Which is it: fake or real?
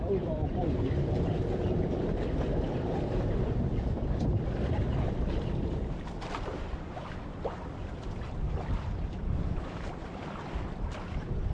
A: fake